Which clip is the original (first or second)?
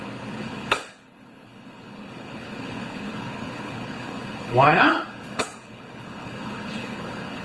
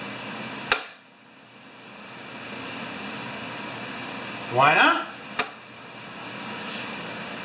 second